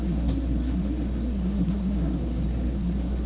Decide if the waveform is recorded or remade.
remade